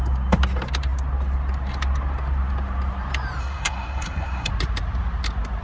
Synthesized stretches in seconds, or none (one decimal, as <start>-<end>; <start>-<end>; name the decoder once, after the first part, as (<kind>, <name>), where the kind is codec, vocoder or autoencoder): 3.4-4.5 (codec, SNAC)

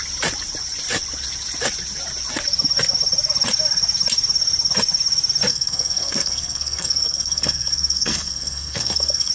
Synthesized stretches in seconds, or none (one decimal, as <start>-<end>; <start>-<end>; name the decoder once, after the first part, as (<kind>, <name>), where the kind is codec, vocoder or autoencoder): 5.5-9.3 (codec, SNAC)

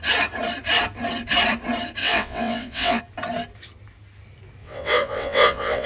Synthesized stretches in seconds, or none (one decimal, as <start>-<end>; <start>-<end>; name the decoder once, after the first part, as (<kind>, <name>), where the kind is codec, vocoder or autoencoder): 2.0-3.0 (vocoder, WaveNeXt); 4.6-5.9